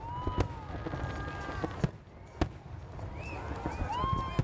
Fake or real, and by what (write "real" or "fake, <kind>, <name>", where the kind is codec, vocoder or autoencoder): real